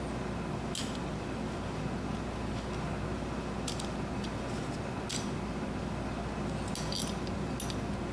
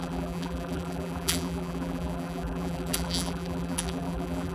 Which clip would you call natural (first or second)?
first